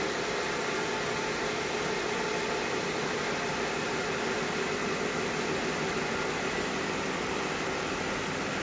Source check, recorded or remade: recorded